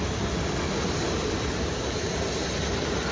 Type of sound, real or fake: real